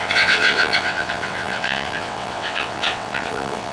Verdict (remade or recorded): remade